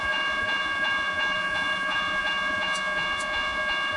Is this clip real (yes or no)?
no